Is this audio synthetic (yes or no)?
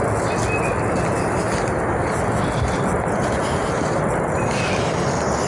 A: no